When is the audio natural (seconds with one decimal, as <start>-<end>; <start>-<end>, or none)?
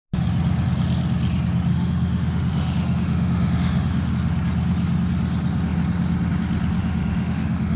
0.0-1.7; 4.1-6.8